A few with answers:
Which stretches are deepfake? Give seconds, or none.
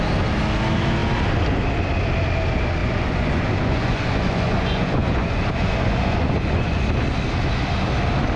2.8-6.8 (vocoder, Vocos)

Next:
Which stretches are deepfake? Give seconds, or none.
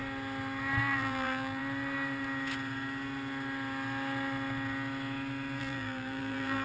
0.8-1.6 (vocoder, BigVGAN v2); 5.6-6.6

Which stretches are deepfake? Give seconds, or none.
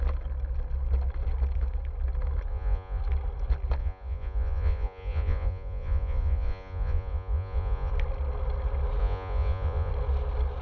2.5-3.0 (vocoder, Vocos); 3.8-7.9; 9.0-9.9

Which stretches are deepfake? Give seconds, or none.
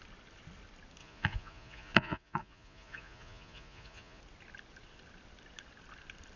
1.0-4.2 (vocoder, Vocos)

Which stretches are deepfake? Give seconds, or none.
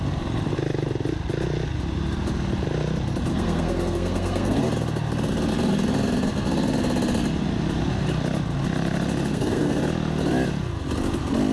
3.3-4.6 (codec, SNAC); 9.3-9.8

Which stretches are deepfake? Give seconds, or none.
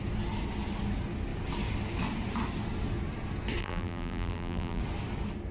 3.6-4.8 (vocoder, BigVGAN v2)